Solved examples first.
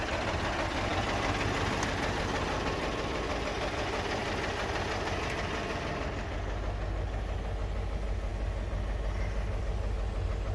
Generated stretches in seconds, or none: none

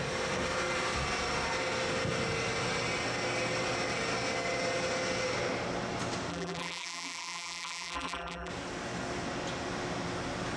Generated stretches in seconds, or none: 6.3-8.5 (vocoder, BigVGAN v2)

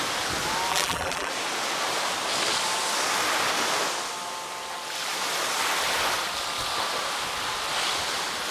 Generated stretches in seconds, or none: 0.7-1.3 (vocoder, BigVGAN v2)

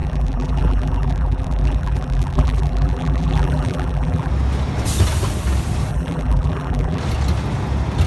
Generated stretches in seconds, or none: 0.0-4.3 (vocoder, BigVGAN v2); 5.9-7.0

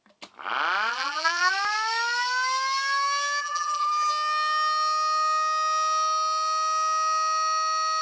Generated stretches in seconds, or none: 0.9-1.5 (vocoder, BigVGAN v2); 3.4-4.1

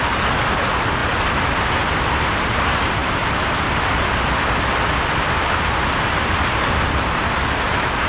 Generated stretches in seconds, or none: none

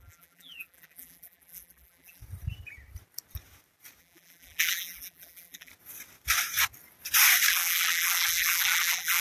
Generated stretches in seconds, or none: 0.0-2.2 (vocoder, BigVGAN v2); 4.0-5.7; 7.5-9.2

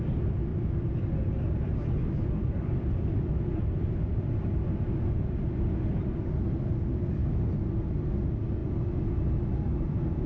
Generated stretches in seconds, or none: 0.5-4.1 (vocoder, BigVGAN v2)